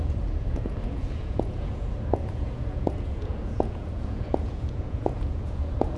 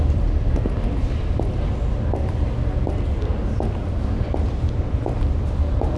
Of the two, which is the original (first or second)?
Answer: second